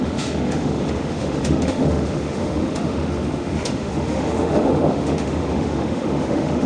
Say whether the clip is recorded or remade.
remade